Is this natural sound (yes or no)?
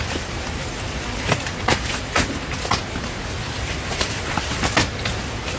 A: yes